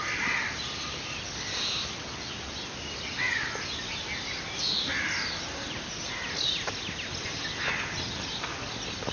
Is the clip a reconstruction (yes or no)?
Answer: no